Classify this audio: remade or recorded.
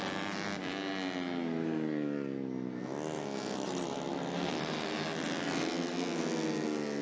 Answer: recorded